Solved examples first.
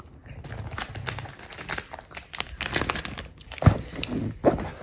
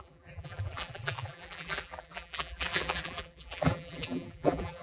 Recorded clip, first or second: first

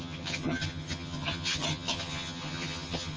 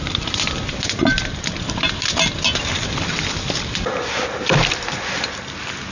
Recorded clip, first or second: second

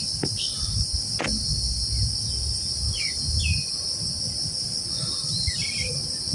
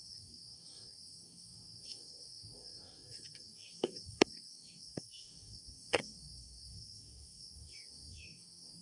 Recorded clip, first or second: first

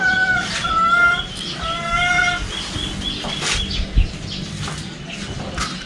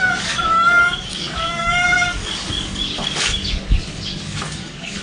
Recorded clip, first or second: first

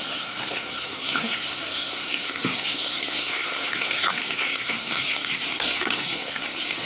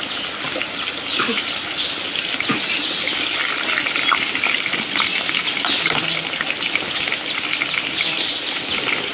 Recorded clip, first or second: second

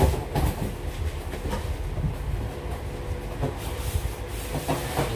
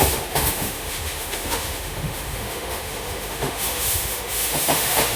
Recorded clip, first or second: first